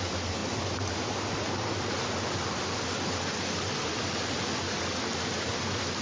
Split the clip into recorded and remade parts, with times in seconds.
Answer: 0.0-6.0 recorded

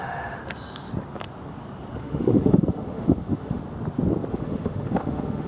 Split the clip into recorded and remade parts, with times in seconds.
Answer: 0.0-0.4 remade; 0.4-2.0 recorded; 2.0-3.6 remade; 3.6-4.3 recorded; 4.3-5.5 remade